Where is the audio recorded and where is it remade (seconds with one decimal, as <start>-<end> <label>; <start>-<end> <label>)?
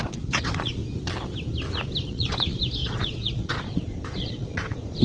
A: 0.0-0.8 remade; 0.8-2.1 recorded; 2.1-5.0 remade